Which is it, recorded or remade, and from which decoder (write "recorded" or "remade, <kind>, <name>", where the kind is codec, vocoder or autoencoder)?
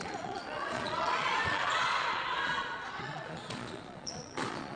remade, vocoder, Vocos